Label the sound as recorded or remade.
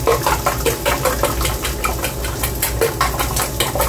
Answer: recorded